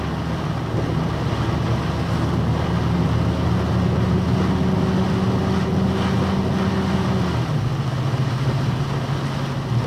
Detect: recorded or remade recorded